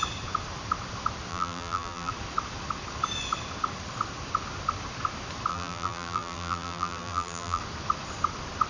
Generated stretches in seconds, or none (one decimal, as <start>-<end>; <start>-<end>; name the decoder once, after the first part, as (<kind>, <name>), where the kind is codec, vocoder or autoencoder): 1.3-2.1 (vocoder, BigVGAN v2); 5.5-7.6

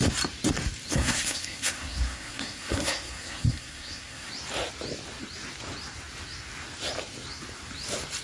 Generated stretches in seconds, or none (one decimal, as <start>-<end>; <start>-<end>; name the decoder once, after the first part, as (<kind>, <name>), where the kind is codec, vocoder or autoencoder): 0.9-4.3 (codec, SNAC)

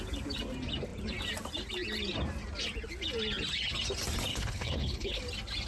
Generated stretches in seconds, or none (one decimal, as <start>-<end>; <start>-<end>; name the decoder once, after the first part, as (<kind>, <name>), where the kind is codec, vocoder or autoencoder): 4.3-5.2 (codec, HILCodec)

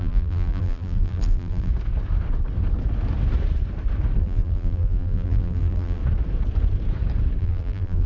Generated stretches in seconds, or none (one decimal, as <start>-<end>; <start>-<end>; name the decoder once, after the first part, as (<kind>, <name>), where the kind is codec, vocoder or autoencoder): 0.0-1.7 (vocoder, BigVGAN v2); 4.2-6.0; 7.4-8.1

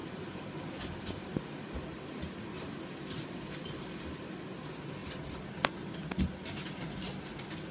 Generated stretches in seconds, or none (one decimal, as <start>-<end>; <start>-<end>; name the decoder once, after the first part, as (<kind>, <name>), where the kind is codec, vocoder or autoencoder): 0.0-1.2 (vocoder, BigVGAN v2); 5.0-5.5

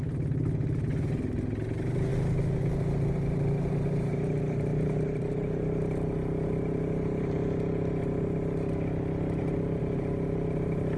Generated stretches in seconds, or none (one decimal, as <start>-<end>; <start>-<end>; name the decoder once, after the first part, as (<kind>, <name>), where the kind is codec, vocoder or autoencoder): none

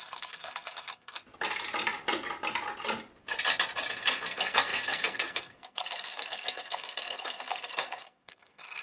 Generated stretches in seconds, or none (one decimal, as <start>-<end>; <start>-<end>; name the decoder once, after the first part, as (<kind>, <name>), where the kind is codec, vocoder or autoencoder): 0.0-1.2 (codec, SNAC); 3.9-8.8

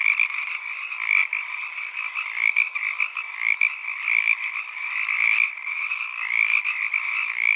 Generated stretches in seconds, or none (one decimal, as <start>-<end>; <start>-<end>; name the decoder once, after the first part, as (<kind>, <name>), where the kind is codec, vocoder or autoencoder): none